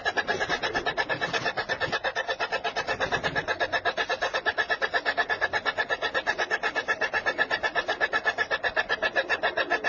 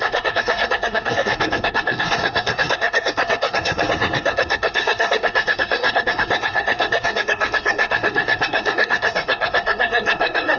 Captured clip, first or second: first